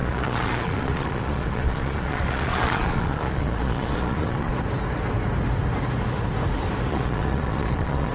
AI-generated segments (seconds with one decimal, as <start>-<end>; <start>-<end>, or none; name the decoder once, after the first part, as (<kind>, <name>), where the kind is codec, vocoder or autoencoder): 0.0-4.5 (vocoder, Vocos); 6.9-8.1